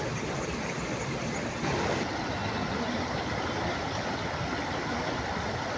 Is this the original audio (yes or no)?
yes